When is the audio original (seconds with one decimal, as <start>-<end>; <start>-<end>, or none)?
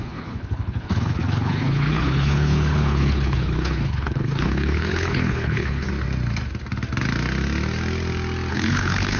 5.9-8.5